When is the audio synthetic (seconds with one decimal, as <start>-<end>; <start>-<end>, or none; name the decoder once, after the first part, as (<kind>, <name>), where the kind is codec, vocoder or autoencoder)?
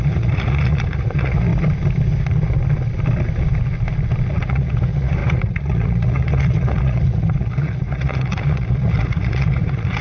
0.0-1.5 (vocoder, Vocos); 4.3-10.0